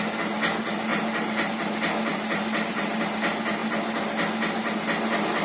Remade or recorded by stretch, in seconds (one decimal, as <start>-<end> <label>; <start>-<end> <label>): 0.0-0.9 recorded; 0.9-1.5 remade; 1.5-2.1 recorded; 2.1-3.0 remade; 3.0-5.4 recorded